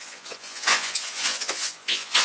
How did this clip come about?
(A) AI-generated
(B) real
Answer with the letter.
A